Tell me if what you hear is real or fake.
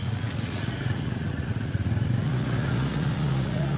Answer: fake